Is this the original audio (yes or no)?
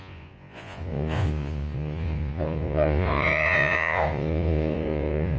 no